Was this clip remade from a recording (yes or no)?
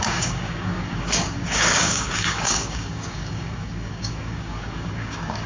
yes